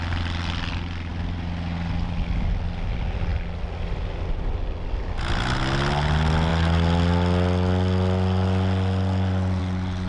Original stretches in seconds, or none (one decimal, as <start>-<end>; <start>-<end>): 0.0-10.1